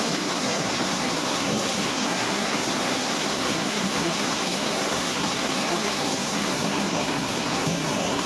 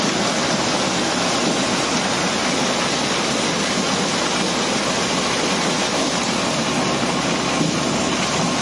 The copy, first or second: first